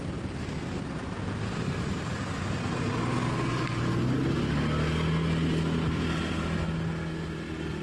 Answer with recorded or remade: recorded